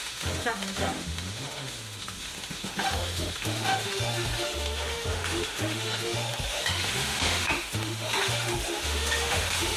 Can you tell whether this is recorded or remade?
remade